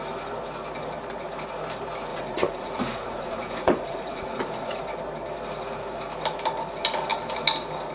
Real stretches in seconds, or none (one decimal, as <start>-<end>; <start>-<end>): 0.0-2.1; 4.8-7.9